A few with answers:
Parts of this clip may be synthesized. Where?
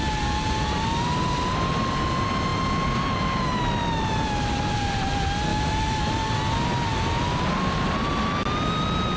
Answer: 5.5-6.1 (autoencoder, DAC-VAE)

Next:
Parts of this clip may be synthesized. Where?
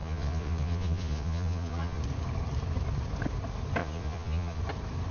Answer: 0.0-2.0 (vocoder, Vocos); 3.8-4.6